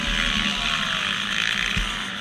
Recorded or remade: recorded